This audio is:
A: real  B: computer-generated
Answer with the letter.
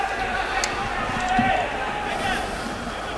A